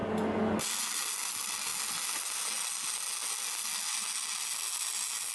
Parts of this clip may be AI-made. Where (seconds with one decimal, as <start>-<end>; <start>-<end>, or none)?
none